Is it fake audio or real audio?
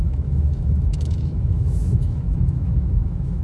fake